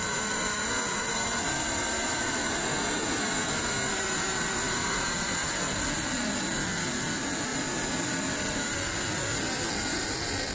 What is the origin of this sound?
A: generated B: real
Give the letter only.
B